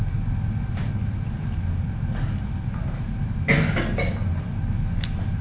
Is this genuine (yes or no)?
yes